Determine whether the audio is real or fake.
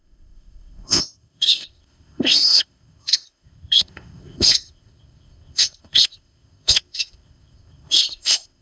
fake